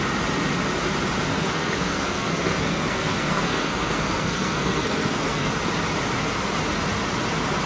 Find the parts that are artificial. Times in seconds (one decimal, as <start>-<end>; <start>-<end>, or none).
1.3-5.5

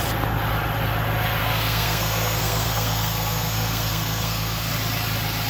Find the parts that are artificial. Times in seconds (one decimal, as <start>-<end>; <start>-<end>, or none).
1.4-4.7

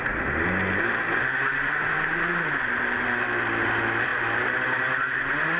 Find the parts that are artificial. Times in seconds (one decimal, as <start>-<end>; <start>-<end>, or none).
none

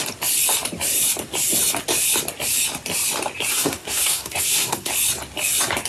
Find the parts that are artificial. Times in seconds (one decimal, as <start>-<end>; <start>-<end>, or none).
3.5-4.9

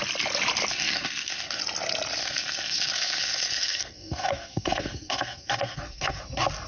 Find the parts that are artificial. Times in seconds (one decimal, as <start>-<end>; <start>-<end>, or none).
0.7-1.6; 2.2-6.2

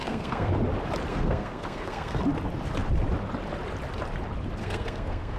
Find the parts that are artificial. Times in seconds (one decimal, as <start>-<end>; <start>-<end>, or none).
0.0-0.5; 1.1-2.2; 4.6-5.4

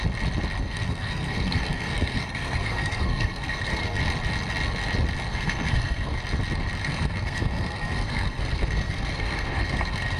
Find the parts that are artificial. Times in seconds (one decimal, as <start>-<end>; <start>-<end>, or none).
0.6-4.0; 5.3-6.2; 6.8-10.2